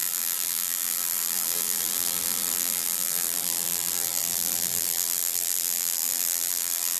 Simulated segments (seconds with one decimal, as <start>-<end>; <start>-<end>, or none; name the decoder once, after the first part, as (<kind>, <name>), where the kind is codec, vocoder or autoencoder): 0.0-7.0 (vocoder, BigVGAN v2)